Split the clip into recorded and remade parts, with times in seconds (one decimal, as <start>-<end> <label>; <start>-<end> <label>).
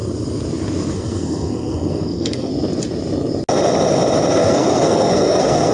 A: 0.0-0.9 recorded; 0.9-2.5 remade; 2.5-4.3 recorded; 4.3-5.7 remade